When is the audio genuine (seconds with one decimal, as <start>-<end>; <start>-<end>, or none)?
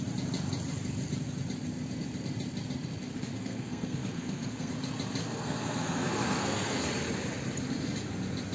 0.0-3.1; 4.7-5.2; 6.9-8.5